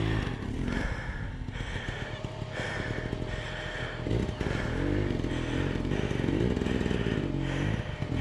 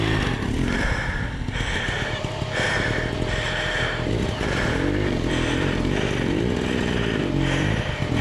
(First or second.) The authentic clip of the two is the first